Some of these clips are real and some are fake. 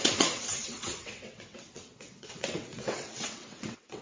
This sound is fake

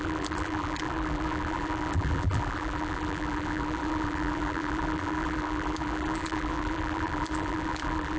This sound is fake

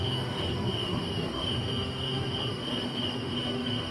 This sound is fake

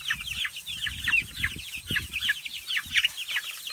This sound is real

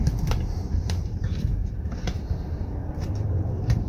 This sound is fake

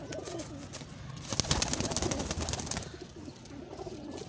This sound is real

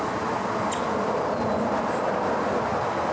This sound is real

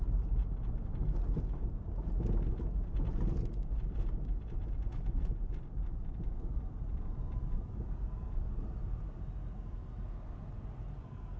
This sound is real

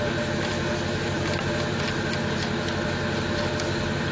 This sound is fake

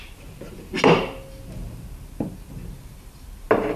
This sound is real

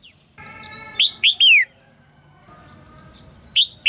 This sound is real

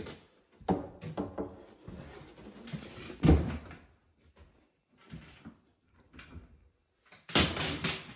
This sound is real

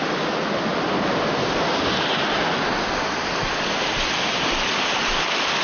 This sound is real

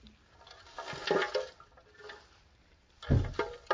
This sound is real